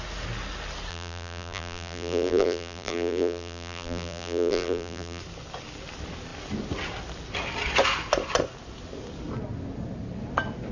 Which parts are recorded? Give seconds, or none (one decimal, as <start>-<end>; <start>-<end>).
0.0-0.9; 5.2-10.7